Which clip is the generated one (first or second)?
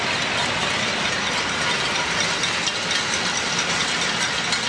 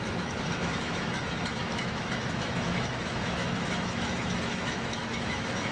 second